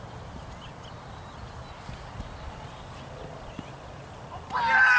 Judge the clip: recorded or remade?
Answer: recorded